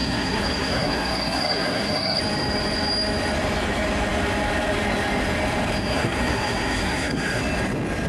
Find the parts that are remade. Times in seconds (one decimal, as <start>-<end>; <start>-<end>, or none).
0.0-2.2; 5.8-7.4